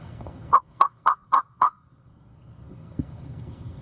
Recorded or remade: remade